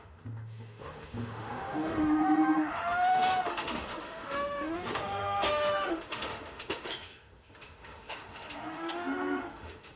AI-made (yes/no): yes